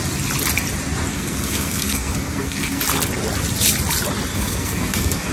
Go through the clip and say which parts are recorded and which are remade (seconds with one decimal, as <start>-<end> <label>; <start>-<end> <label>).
0.0-1.1 recorded; 1.1-2.8 remade; 2.8-4.3 recorded; 4.3-5.3 remade

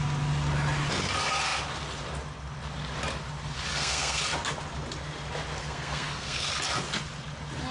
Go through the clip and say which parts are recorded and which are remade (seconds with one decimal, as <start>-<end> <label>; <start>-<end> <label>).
0.0-3.7 recorded; 3.7-4.2 remade; 4.2-5.6 recorded; 5.6-6.5 remade; 6.5-7.7 recorded

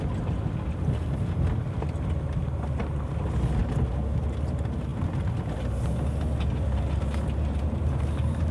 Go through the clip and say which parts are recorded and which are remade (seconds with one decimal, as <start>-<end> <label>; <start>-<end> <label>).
0.0-8.5 recorded

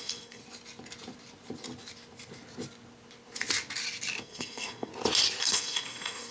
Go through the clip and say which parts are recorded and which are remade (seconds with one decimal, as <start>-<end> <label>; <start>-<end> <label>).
0.0-0.4 remade; 0.4-4.2 recorded; 4.2-4.9 remade; 4.9-5.4 recorded; 5.4-6.3 remade

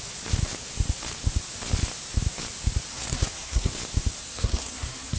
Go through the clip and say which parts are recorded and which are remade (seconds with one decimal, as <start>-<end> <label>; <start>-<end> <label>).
0.0-2.9 recorded; 2.9-3.7 remade; 3.7-4.2 recorded; 4.2-5.2 remade

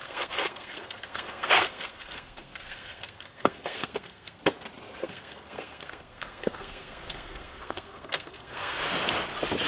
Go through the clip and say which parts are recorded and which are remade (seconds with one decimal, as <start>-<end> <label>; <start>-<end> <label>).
0.0-4.4 remade; 4.4-5.0 recorded; 5.0-8.8 remade; 8.8-9.7 recorded